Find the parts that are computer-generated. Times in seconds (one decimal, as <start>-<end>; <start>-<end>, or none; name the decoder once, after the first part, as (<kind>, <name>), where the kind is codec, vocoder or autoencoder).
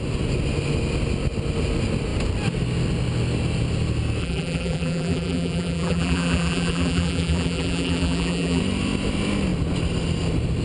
4.2-8.6 (vocoder, BigVGAN v2)